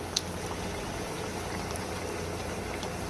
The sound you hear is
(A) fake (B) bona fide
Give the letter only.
B